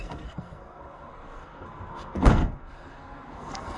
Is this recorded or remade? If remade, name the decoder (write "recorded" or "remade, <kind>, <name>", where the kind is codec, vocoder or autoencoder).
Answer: remade, codec, SNAC